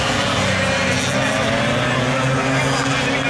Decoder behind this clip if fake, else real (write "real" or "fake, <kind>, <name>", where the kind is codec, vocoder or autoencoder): real